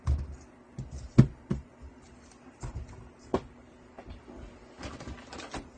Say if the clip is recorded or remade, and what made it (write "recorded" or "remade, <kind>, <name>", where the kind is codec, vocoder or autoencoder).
recorded